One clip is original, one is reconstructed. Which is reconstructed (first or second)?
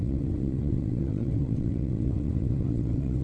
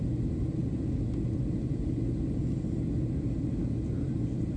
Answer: first